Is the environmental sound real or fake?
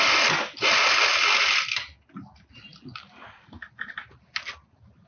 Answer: real